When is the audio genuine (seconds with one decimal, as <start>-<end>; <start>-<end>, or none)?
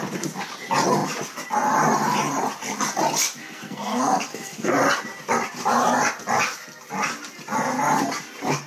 0.0-3.4; 4.7-8.7